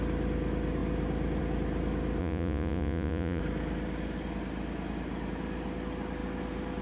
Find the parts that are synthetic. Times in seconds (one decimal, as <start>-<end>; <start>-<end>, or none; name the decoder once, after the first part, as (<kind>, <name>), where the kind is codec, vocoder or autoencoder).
2.2-3.4 (vocoder, Vocos)